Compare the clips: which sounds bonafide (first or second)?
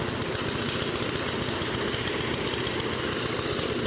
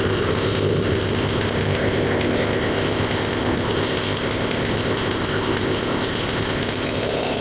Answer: first